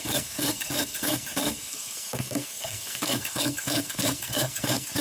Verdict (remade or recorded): remade